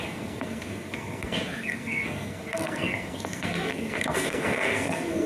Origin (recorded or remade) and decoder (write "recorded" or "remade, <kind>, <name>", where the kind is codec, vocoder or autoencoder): remade, codec, SNAC